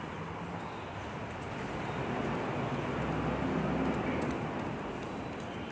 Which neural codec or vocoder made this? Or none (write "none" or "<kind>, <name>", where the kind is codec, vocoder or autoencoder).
none